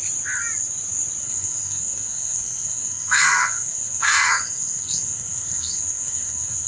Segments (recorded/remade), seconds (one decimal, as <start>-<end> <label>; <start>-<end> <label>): 0.0-1.2 recorded; 1.2-6.7 remade